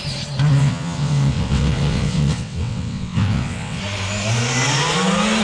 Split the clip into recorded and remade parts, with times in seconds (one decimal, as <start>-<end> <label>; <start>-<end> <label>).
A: 0.0-0.6 recorded; 0.6-3.8 remade; 3.8-5.4 recorded